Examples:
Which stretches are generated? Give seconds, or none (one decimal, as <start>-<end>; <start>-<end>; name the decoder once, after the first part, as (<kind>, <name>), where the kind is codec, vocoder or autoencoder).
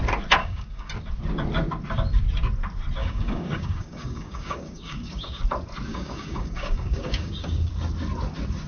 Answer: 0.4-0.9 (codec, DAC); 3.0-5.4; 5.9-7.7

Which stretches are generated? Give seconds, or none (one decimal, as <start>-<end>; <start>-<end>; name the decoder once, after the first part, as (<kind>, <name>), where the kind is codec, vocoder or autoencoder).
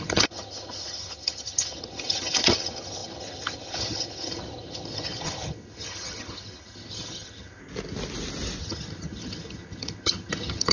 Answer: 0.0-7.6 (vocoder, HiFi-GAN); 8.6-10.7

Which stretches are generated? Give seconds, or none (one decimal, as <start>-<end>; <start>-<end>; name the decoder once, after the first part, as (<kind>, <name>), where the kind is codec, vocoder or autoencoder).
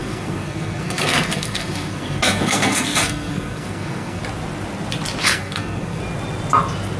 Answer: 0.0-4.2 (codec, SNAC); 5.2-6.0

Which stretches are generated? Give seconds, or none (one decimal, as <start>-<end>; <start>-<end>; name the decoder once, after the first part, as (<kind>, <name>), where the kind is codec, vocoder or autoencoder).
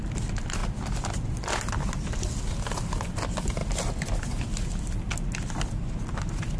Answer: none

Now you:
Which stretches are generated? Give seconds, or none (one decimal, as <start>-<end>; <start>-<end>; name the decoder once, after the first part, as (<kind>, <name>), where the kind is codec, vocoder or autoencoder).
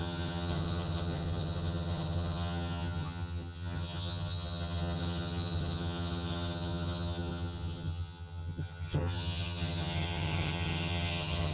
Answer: 0.0-11.5 (vocoder, HiFi-GAN)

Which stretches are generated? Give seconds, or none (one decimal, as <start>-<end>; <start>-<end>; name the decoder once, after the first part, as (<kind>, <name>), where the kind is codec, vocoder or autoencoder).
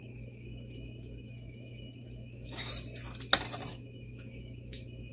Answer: 0.0-2.7 (autoencoder, DAC-VAE); 3.7-5.1